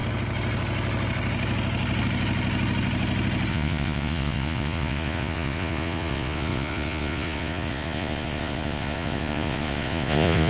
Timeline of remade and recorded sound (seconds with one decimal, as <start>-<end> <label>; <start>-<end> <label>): 0.0-3.5 recorded; 3.5-10.5 remade